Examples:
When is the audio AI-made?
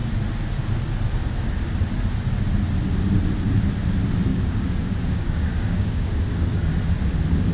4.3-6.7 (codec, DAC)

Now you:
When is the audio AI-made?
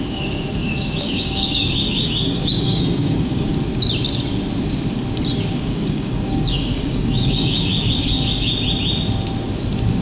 0.0-3.5 (codec, DAC); 5.5-8.5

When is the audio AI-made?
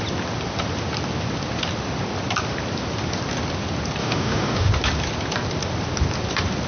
4.0-4.7 (codec, DAC)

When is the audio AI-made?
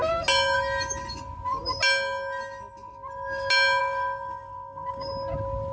3.8-5.1 (codec, DAC)